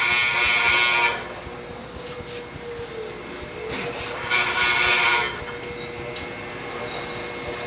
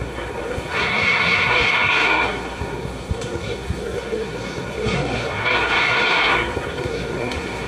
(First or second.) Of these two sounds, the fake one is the second